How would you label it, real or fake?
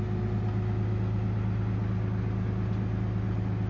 real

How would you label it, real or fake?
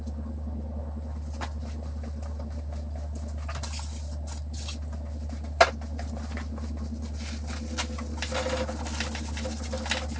real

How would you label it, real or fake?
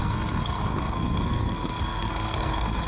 fake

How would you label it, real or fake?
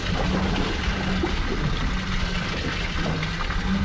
real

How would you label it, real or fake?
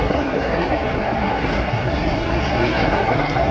fake